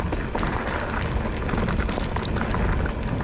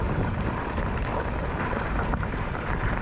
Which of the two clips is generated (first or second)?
second